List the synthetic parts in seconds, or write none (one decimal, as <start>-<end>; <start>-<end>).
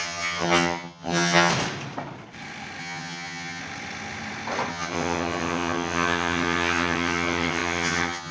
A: 0.0-1.5; 2.8-3.6; 4.7-8.3